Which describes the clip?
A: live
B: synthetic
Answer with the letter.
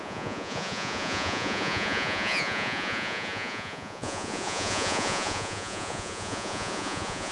B